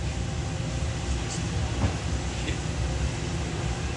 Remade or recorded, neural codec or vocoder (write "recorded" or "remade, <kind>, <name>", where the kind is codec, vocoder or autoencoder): recorded